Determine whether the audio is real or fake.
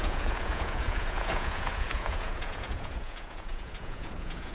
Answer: fake